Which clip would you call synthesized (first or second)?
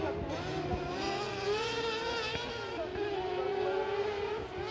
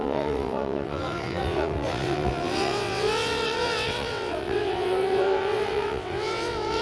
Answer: second